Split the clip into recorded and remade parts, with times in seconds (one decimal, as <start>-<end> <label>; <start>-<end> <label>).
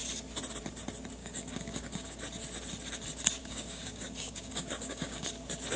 0.0-1.2 recorded; 1.2-2.2 remade; 2.2-3.4 recorded; 3.4-5.3 remade; 5.3-5.8 recorded